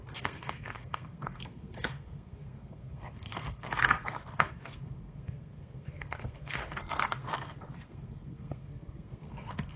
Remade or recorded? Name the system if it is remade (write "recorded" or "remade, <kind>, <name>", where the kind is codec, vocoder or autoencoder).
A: remade, codec, SNAC